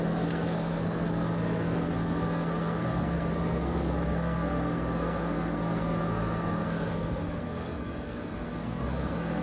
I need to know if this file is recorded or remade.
remade